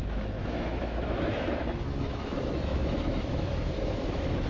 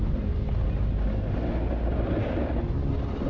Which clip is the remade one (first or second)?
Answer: first